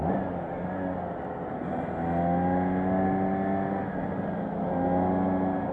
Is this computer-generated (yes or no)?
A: no